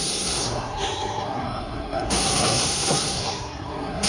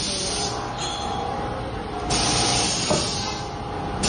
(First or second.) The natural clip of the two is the second